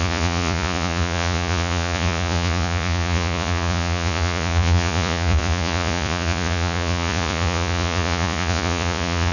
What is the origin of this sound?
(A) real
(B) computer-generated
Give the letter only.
B